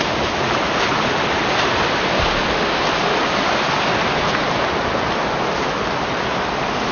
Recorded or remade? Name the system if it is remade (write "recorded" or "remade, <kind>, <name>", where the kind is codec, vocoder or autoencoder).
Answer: recorded